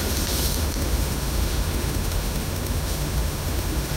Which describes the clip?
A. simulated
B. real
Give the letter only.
A